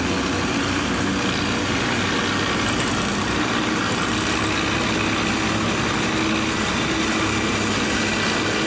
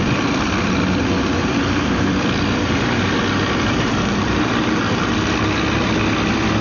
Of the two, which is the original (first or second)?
first